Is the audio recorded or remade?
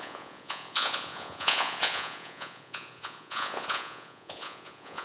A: remade